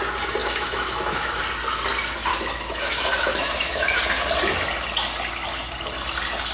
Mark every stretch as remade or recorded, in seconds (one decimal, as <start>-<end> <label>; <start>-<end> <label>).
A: 0.0-0.4 recorded; 0.4-1.4 remade; 1.4-2.3 recorded; 2.3-4.0 remade; 4.0-6.5 recorded